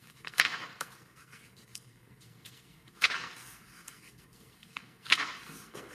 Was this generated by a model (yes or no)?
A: yes